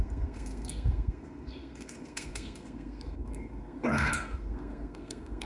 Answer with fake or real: fake